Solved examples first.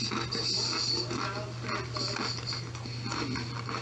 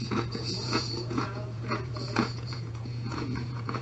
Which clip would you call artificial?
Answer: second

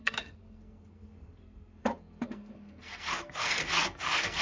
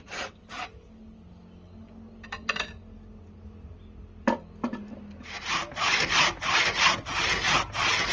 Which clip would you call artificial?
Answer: first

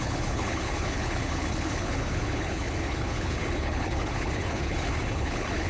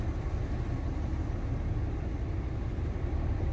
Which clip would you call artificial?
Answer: first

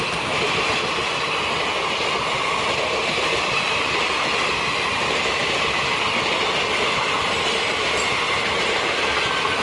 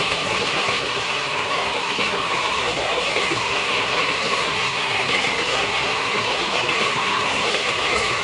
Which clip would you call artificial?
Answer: second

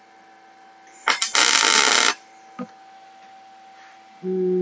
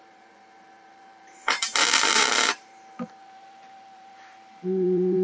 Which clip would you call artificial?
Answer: second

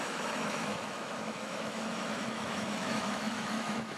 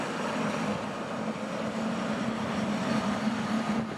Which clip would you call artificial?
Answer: first